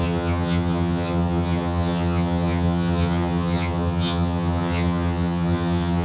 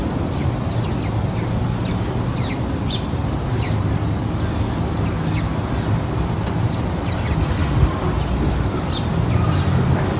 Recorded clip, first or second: second